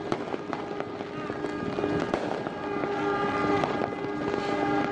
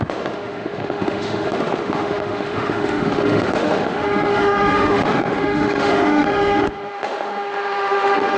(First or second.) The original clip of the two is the first